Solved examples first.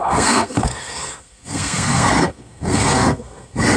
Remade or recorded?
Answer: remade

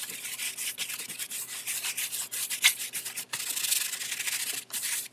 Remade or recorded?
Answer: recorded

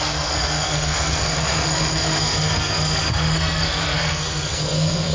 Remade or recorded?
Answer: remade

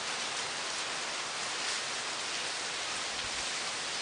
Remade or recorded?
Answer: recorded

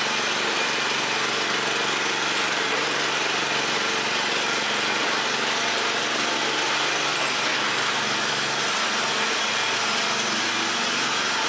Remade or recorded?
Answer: recorded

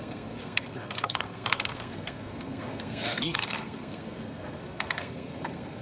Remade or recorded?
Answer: remade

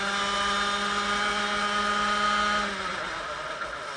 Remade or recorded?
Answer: recorded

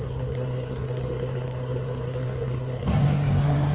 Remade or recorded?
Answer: remade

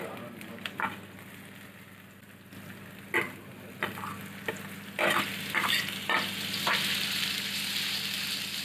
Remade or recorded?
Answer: recorded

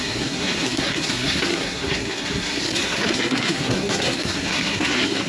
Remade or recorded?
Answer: remade